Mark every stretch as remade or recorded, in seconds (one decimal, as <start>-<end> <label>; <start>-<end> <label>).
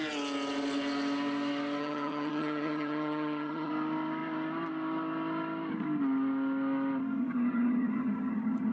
0.0-1.8 recorded; 1.8-3.7 remade; 3.7-7.2 recorded; 7.2-8.7 remade